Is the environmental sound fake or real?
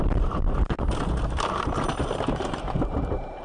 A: fake